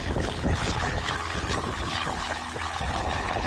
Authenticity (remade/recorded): remade